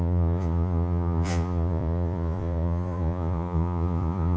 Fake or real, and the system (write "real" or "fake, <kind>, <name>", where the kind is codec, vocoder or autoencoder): fake, vocoder, Vocos